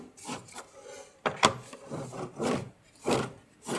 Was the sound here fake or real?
real